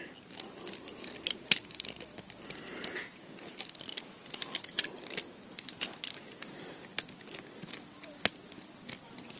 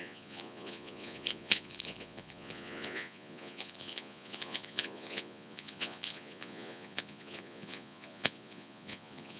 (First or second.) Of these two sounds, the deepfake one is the second